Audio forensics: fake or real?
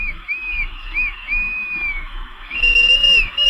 fake